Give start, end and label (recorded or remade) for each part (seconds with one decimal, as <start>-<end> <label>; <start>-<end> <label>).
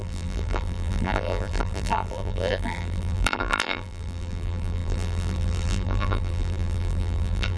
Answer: 0.0-7.6 remade